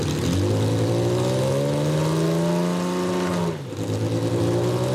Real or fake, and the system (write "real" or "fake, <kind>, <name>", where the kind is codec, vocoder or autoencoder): real